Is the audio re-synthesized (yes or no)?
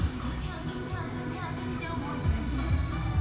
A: no